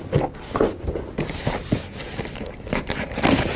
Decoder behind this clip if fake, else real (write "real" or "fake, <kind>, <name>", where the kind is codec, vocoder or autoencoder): real